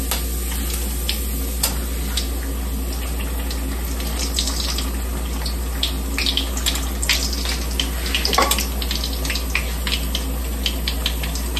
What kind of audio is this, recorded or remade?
recorded